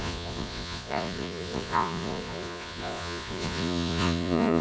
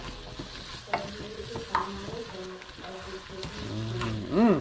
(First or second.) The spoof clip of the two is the first